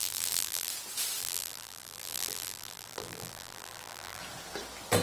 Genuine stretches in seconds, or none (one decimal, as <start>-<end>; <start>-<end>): 0.7-1.2; 4.2-5.0